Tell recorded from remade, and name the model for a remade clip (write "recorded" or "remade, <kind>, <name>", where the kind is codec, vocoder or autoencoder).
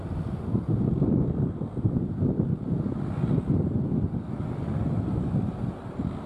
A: recorded